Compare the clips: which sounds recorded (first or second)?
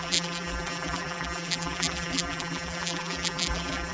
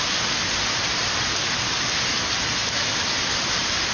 second